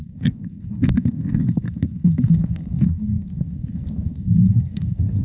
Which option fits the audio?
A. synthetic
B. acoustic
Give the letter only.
A